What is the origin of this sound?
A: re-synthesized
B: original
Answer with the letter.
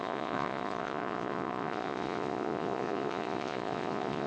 A